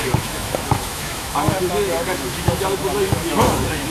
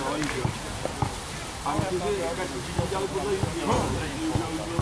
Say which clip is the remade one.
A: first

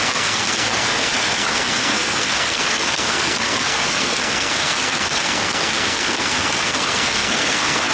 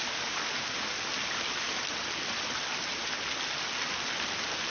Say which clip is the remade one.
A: first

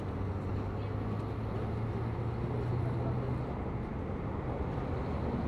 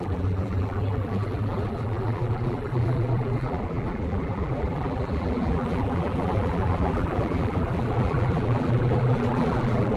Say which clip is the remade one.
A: second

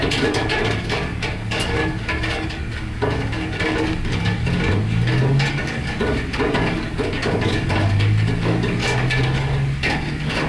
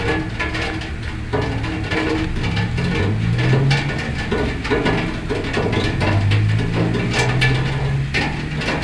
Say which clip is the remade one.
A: first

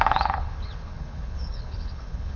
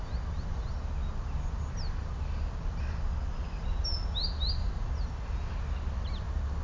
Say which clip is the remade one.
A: first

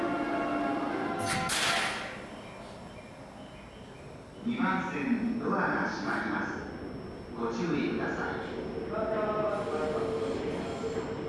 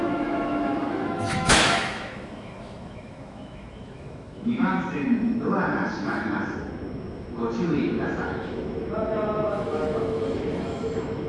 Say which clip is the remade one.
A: second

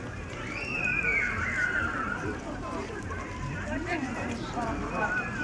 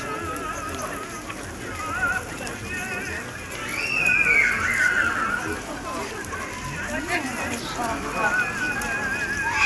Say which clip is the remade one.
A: first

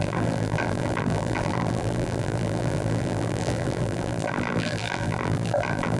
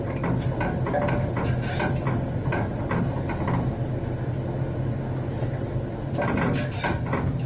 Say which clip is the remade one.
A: first